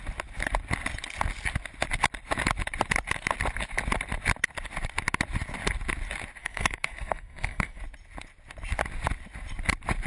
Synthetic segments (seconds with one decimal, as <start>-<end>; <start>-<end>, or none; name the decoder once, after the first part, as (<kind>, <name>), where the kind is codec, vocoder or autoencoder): 6.4-7.8 (codec, SNAC)